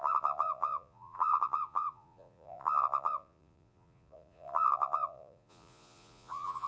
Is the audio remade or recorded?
remade